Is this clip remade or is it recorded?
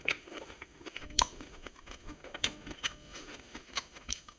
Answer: remade